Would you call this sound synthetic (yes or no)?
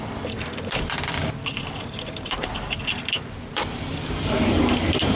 yes